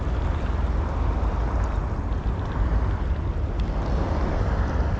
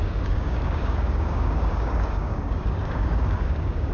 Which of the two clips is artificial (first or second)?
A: second